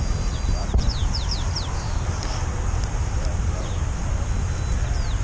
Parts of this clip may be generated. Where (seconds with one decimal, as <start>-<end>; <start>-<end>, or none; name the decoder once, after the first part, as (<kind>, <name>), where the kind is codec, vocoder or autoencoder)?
1.0-4.1 (vocoder, BigVGAN v2)

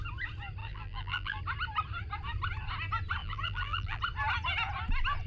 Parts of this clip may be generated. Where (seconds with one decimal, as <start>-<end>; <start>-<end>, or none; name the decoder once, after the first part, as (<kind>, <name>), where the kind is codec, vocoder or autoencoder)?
0.6-1.4 (vocoder, BigVGAN v2); 3.2-4.0

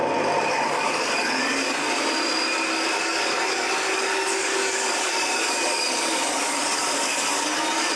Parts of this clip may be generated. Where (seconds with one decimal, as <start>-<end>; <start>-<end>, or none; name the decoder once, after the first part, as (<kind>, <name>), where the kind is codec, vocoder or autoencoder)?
0.5-1.8 (codec, DAC); 3.0-8.0

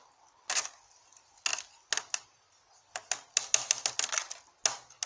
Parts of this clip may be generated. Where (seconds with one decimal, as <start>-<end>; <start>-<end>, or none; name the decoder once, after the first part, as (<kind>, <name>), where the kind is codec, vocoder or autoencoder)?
none

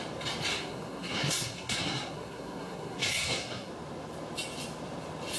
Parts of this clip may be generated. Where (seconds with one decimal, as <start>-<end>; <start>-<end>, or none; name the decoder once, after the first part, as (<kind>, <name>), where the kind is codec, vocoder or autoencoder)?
0.5-3.7 (codec, SNAC)

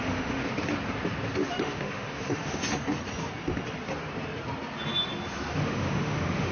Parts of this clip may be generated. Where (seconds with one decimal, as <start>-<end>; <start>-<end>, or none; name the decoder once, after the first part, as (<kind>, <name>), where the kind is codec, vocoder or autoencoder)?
0.0-0.4 (autoencoder, DAC-VAE); 1.6-2.6; 5.5-6.5

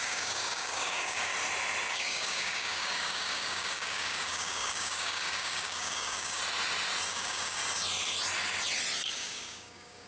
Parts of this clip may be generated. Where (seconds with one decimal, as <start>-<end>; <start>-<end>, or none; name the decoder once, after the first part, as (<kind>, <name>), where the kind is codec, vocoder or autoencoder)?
0.0-1.3 (codec, DAC); 1.9-6.4; 7.1-7.6; 9.1-10.1